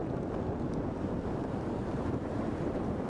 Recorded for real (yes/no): yes